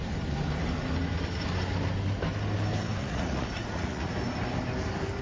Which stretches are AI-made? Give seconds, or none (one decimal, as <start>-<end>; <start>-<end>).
3.0-4.1